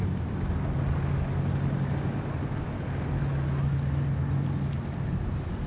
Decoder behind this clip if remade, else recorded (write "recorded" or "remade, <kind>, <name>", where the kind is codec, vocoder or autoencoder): recorded